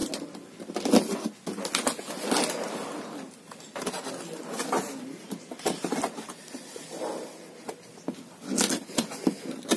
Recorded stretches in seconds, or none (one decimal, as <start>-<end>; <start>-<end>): 0.0-9.8